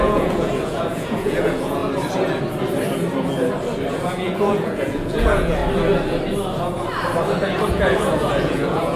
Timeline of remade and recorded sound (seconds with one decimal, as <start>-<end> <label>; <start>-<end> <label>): 0.0-1.8 remade; 1.8-3.9 recorded; 3.9-5.6 remade; 5.6-7.7 recorded; 7.7-9.0 remade